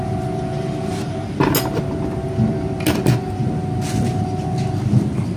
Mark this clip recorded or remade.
recorded